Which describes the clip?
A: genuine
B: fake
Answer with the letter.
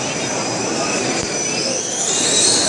B